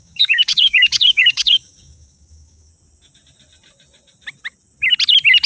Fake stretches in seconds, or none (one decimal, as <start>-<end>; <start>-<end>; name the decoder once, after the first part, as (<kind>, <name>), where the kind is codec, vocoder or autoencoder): 0.0-2.7 (codec, DAC)